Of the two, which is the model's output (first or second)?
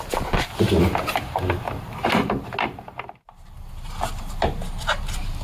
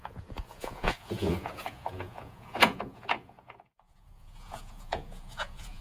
second